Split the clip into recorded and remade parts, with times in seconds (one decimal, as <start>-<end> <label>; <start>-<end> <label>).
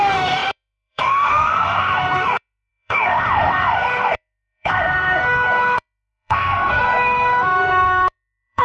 0.0-8.6 remade